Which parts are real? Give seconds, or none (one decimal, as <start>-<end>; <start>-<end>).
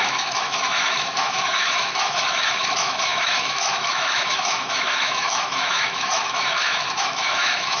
none